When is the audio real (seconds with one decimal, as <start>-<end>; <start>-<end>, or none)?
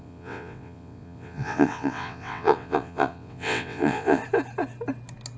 4.2-5.4